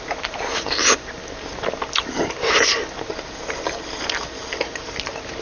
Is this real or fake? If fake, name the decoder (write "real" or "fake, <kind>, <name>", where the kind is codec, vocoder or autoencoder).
real